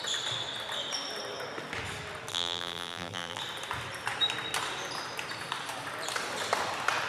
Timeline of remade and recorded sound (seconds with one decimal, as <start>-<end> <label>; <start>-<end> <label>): 0.0-2.3 recorded; 2.3-3.4 remade; 3.4-7.1 recorded